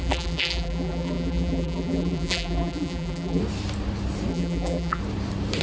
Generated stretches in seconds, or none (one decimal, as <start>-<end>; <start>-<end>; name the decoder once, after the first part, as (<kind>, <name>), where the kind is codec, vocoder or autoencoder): 0.0-3.4 (vocoder, BigVGAN v2); 4.3-5.0